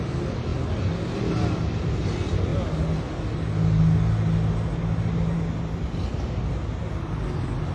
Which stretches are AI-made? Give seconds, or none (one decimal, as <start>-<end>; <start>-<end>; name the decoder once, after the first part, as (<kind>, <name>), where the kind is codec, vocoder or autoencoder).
none